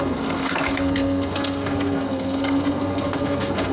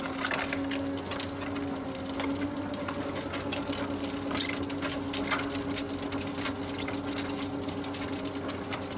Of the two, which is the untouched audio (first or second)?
second